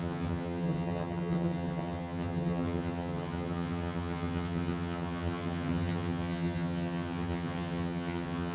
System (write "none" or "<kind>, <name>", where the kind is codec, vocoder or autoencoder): vocoder, HiFi-GAN